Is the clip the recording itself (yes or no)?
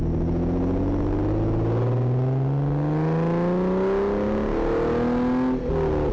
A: yes